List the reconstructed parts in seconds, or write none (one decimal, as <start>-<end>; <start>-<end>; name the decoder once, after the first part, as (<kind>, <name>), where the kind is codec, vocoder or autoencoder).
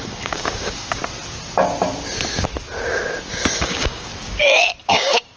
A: 0.0-1.0 (codec, DAC); 3.6-4.1; 4.9-5.4